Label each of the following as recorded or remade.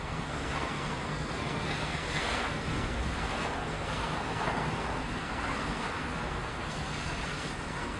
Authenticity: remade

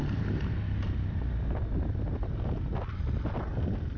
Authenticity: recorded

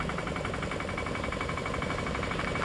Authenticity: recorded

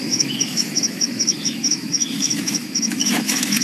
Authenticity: remade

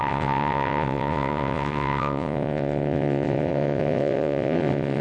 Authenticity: remade